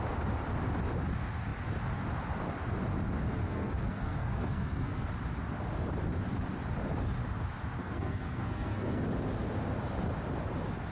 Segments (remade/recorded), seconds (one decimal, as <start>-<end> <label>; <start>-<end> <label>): 0.0-3.4 recorded; 3.4-5.1 remade; 5.1-7.8 recorded; 7.8-9.0 remade; 9.0-10.9 recorded